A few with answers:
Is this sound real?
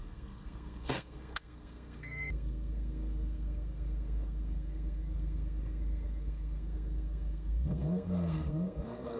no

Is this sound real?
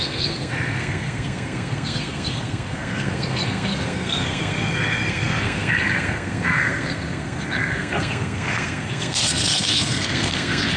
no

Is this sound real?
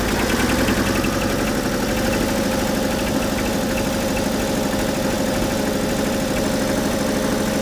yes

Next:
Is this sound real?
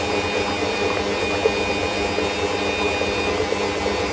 yes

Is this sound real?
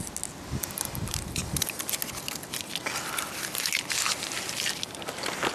yes